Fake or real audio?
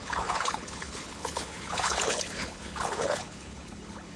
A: fake